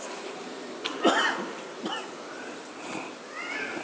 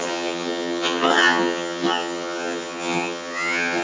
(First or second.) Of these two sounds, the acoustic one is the first